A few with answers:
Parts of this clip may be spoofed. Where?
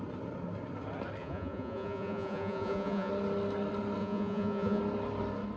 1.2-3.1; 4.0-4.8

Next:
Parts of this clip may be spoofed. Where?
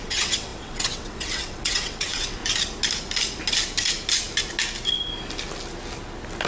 0.0-2.4